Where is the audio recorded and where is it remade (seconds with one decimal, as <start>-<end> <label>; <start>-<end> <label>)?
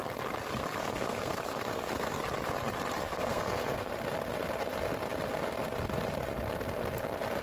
0.0-0.8 recorded; 0.8-2.2 remade; 2.2-3.0 recorded; 3.0-3.9 remade; 3.9-7.4 recorded